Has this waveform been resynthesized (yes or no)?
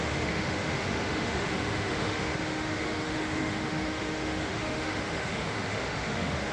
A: yes